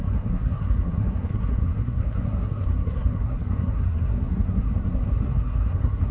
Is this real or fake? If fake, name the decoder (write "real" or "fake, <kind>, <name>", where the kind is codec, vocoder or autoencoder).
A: fake, codec, SNAC